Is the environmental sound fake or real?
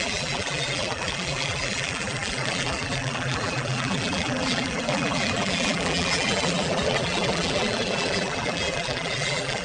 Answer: fake